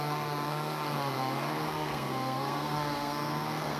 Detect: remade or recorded remade